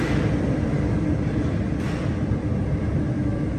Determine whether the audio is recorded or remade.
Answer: recorded